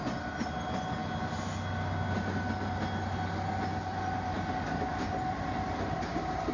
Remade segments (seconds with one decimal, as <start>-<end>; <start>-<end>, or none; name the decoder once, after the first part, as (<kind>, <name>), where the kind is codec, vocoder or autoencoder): none